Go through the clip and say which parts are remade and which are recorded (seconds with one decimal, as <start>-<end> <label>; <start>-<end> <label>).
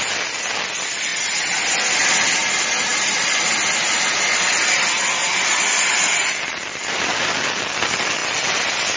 0.0-9.0 recorded